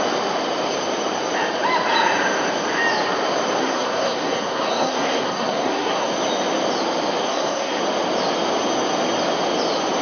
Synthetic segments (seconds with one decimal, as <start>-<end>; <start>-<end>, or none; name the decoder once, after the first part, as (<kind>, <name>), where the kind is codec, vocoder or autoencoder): 3.6-6.1 (codec, SNAC); 7.3-7.8